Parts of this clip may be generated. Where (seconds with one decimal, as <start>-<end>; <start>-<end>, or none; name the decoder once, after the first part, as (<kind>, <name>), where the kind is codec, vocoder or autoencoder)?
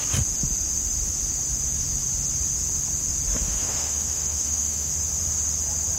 3.4-4.9 (autoencoder, DAC-VAE)